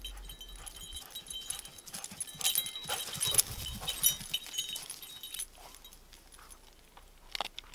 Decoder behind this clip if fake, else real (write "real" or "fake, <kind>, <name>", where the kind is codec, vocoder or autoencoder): real